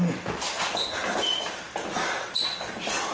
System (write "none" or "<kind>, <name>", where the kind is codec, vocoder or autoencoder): none